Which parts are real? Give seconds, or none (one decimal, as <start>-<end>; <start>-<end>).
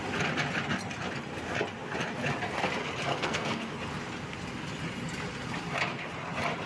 0.0-3.1; 3.7-6.7